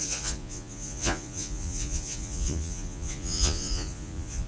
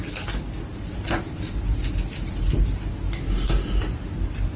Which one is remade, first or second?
first